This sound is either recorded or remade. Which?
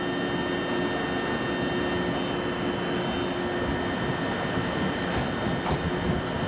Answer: recorded